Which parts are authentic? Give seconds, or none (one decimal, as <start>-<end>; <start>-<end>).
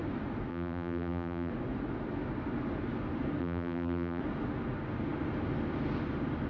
0.0-0.5; 1.5-3.4; 4.2-6.5